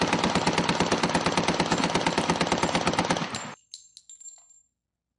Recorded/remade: recorded